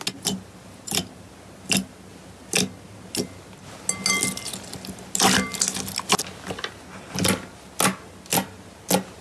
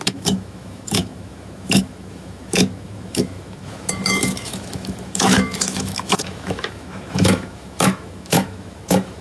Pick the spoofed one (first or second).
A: second